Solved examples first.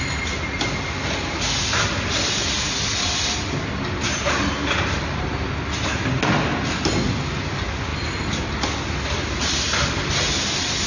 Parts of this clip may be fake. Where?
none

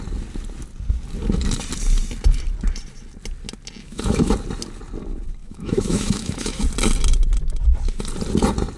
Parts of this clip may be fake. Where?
3.8-4.3 (autoencoder, DAC-VAE); 5.4-6.6

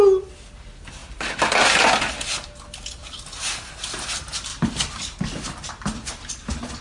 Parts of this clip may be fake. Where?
none

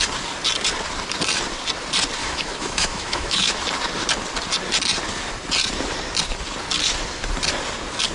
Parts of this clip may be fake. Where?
2.2-3.6 (autoencoder, DAC-VAE)

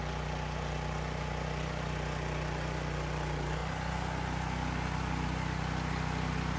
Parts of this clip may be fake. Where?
none

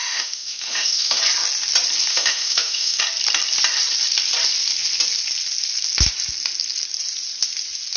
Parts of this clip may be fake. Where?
0.0-1.2 (autoencoder, DAC-VAE); 2.1-3.0

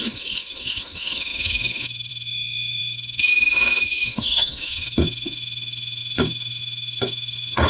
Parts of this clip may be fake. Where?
0.0-7.7 (autoencoder, DAC-VAE)

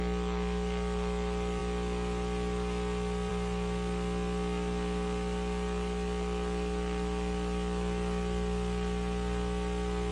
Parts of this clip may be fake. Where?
none